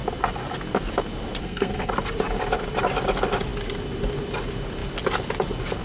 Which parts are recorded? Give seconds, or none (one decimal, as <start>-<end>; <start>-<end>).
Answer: 0.0-1.4; 1.9-5.8